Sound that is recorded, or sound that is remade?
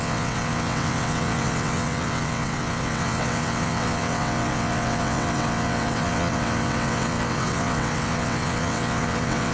remade